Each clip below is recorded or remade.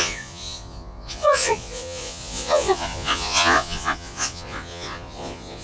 remade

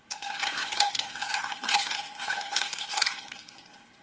remade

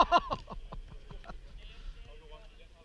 recorded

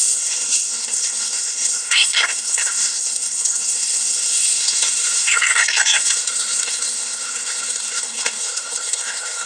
remade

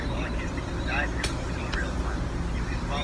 recorded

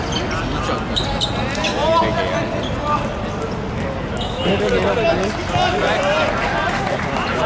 recorded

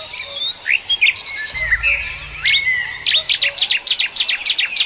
recorded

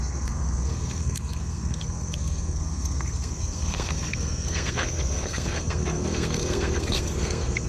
remade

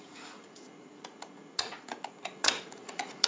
remade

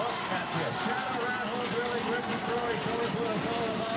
recorded